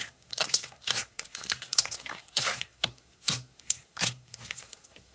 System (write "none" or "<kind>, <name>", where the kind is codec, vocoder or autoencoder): codec, SNAC